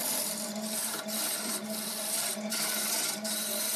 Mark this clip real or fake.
fake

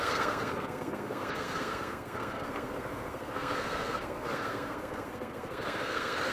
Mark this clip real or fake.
fake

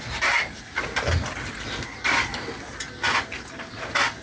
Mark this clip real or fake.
real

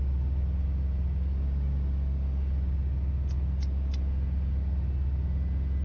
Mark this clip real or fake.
real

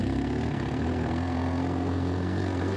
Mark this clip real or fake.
fake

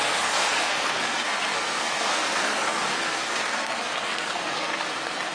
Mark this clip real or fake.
fake